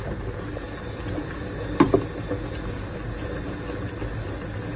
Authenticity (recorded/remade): recorded